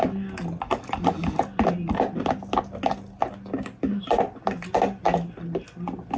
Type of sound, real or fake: real